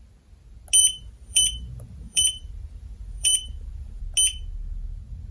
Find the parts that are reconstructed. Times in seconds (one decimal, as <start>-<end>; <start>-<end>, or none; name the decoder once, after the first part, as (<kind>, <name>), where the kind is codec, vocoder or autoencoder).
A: 0.8-4.0 (vocoder, BigVGAN v2)